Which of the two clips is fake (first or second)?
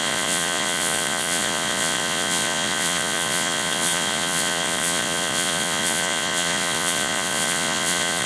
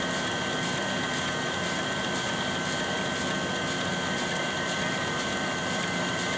first